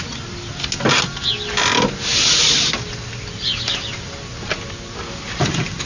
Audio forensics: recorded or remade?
recorded